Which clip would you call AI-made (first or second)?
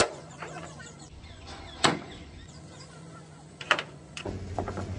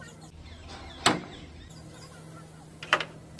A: first